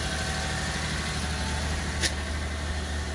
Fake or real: real